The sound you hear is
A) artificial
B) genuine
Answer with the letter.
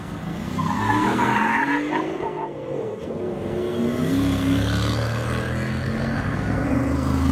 A